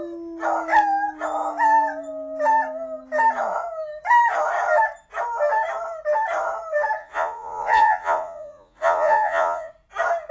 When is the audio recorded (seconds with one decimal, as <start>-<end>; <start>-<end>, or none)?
0.0-7.0; 9.7-10.3